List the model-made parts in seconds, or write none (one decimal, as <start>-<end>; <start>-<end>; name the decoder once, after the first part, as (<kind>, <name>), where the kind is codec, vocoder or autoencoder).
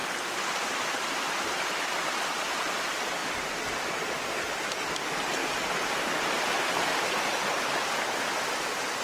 none